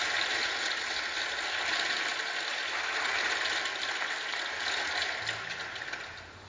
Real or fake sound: real